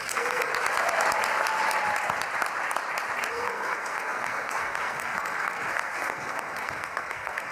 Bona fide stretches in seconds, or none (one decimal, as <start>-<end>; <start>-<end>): 0.5-3.3